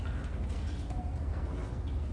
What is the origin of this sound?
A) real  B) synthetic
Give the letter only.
B